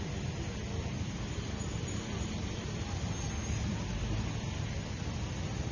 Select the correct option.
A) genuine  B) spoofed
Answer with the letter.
A